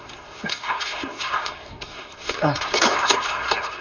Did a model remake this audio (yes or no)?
yes